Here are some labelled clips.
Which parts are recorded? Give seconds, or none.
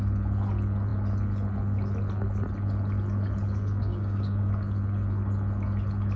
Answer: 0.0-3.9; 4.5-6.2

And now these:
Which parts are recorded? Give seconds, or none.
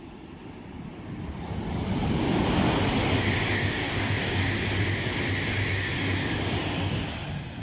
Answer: 0.0-3.8; 4.4-7.6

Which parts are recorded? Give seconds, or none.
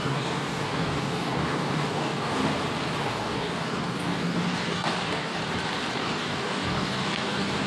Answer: 2.4-3.0; 5.4-5.9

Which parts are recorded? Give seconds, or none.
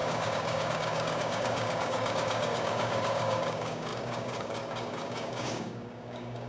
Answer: none